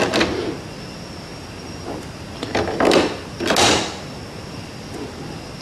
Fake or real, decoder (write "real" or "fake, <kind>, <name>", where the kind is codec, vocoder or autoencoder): real